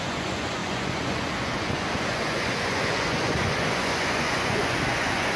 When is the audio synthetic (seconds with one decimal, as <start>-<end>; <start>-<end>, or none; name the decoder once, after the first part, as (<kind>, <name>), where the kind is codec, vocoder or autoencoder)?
0.0-5.4 (vocoder, Vocos)